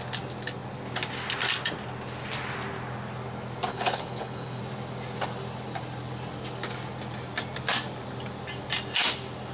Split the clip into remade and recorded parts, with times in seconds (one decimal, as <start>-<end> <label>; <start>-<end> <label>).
0.0-3.7 recorded; 3.7-4.6 remade; 4.6-9.5 recorded